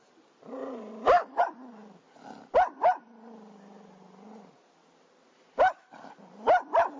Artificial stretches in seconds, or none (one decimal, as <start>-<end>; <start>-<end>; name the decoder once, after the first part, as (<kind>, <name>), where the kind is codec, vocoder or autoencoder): 0.6-1.4 (vocoder, BigVGAN v2)